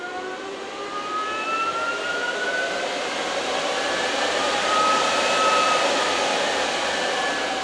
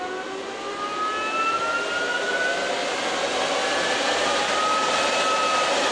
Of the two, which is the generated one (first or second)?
first